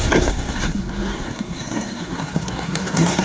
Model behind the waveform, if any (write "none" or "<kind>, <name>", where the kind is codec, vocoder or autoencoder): codec, SNAC